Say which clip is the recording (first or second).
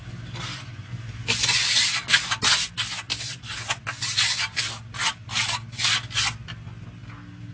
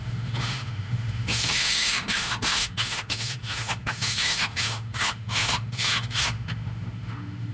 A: first